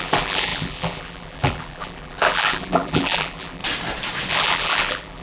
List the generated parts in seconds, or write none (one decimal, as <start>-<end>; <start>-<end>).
0.0-3.6; 4.3-5.2